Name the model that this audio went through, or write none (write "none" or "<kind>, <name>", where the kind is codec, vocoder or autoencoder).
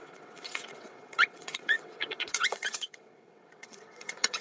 vocoder, WaveNeXt